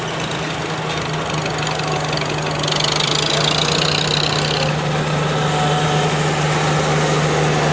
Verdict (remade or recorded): recorded